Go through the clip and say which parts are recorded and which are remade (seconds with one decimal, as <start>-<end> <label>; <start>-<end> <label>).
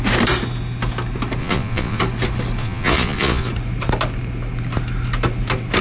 0.0-1.4 recorded; 1.4-2.0 remade; 2.0-2.6 recorded; 2.6-3.5 remade; 3.5-5.8 recorded